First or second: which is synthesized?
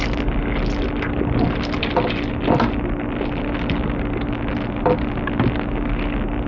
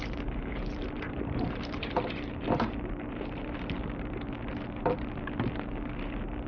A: second